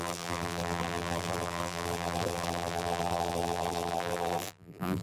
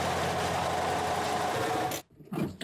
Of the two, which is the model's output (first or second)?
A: first